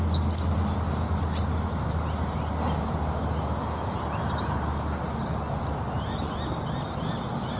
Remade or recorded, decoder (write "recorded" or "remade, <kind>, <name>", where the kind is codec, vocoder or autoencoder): recorded